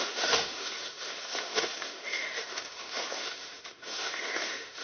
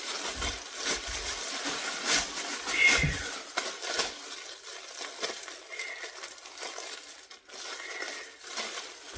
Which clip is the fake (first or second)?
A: first